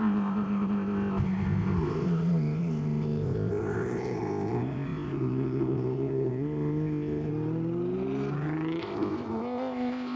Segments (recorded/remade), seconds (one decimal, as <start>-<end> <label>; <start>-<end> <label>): 0.0-7.3 remade; 7.3-8.8 recorded; 8.8-10.2 remade